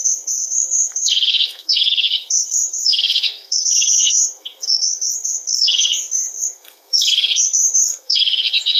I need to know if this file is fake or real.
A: fake